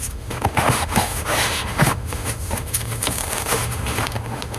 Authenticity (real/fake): fake